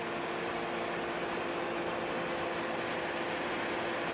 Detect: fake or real real